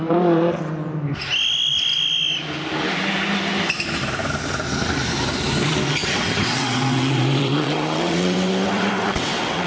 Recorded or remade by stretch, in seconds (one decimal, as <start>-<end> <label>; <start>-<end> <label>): 0.0-5.9 recorded; 5.9-9.7 remade